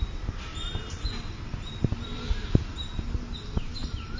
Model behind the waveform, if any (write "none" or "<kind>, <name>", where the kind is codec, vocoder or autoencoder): none